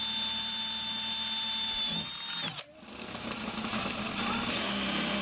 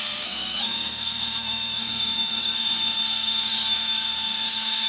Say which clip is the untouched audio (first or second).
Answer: first